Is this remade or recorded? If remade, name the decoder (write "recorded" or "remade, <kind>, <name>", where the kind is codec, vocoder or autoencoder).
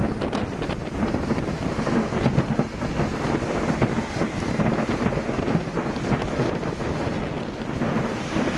recorded